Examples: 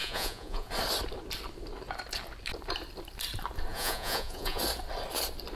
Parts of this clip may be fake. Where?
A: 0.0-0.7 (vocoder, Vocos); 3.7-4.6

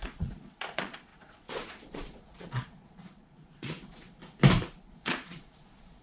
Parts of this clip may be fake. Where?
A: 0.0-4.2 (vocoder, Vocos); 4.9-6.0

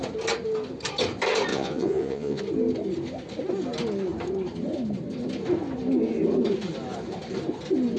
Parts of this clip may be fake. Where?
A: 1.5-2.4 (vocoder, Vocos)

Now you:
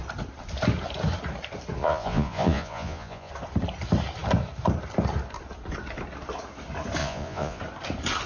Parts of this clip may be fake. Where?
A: 1.8-3.3 (vocoder, Vocos); 7.0-7.6

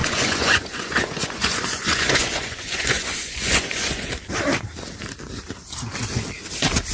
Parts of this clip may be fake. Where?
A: 0.0-4.1 (vocoder, Vocos)

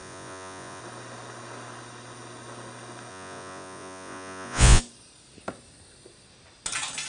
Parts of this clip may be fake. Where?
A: 0.0-0.8 (vocoder, Vocos); 3.1-4.8